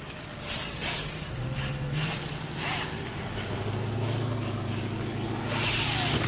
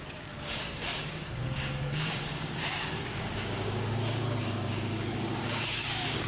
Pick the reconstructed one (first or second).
second